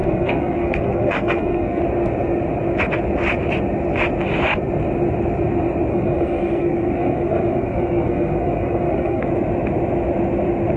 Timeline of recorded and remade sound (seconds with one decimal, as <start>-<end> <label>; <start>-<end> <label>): 0.0-1.8 remade; 1.8-5.9 recorded; 5.9-9.3 remade; 9.3-10.8 recorded